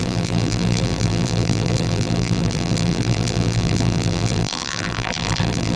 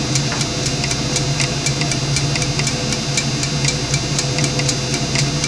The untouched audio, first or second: second